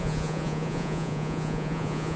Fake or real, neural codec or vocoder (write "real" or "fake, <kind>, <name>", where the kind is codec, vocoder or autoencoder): fake, vocoder, Vocos